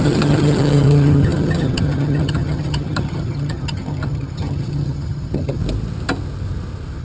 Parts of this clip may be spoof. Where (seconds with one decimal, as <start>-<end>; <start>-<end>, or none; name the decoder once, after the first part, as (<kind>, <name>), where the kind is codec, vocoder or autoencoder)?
0.0-5.6 (vocoder, HiFi-GAN)